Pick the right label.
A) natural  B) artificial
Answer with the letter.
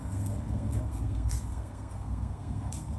B